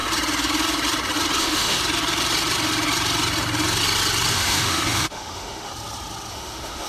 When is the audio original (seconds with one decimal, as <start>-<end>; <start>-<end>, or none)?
0.0-1.4; 1.8-4.3; 5.7-6.3